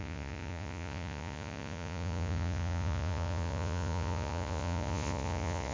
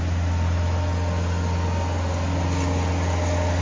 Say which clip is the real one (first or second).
second